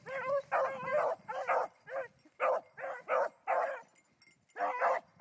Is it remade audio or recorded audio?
recorded